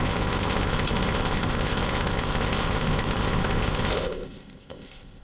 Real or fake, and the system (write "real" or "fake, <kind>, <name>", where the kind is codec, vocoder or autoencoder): fake, codec, ZipCodec